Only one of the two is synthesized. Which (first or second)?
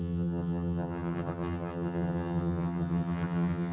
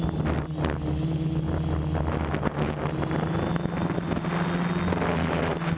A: first